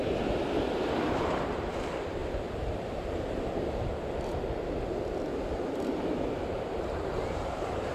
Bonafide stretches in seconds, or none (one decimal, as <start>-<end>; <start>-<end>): 0.0-2.2; 4.4-7.1